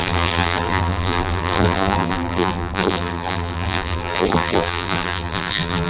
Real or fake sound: fake